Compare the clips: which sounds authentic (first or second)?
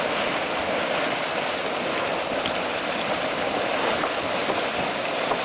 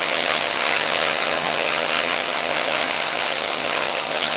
first